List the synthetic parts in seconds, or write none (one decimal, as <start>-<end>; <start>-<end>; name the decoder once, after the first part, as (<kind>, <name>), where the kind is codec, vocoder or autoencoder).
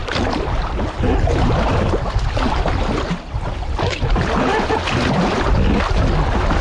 none